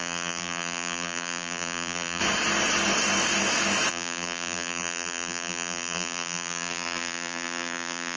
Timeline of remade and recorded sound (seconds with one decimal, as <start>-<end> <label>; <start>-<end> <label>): 0.0-2.2 remade; 2.2-3.9 recorded; 3.9-8.2 remade